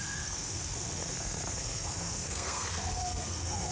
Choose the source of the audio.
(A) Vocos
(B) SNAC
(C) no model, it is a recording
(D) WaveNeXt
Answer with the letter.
B